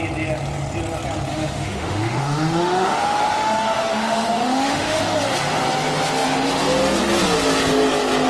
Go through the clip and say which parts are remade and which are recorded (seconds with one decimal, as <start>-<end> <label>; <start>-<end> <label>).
0.0-1.3 recorded; 1.3-5.0 remade; 5.0-8.3 recorded